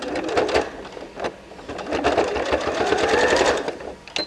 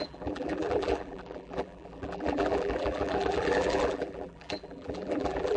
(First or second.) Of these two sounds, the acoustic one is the first